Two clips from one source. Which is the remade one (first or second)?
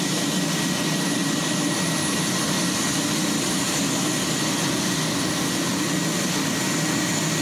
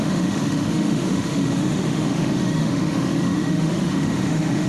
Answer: second